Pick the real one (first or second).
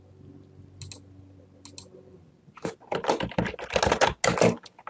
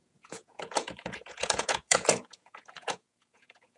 first